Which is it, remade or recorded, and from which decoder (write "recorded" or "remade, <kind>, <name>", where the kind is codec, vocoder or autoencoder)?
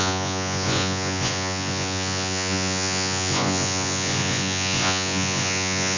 remade, vocoder, Vocos